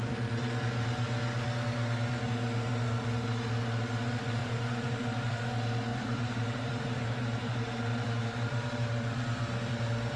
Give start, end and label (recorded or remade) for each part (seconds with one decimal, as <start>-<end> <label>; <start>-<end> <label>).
0.0-4.4 recorded; 4.4-5.3 remade; 5.3-5.9 recorded; 5.9-9.1 remade; 9.1-10.2 recorded